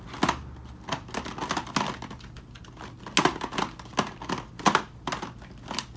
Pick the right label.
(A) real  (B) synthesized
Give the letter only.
A